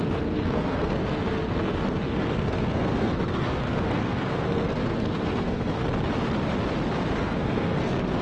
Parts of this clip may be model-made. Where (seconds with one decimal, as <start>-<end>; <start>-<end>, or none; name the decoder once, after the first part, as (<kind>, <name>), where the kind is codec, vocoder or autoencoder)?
0.0-5.8 (codec, SNAC); 7.2-8.2